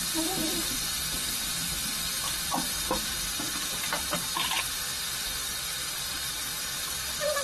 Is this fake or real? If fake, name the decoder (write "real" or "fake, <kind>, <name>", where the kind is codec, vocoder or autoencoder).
real